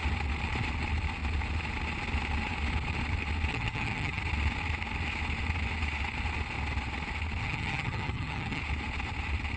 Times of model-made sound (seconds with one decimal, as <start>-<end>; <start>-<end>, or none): 3.5-4.2; 7.4-8.6